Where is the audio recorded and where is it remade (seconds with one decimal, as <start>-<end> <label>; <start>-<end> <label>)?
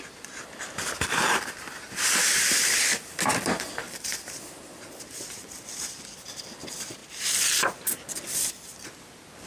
0.0-9.5 recorded